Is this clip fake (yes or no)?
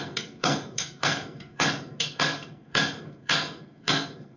yes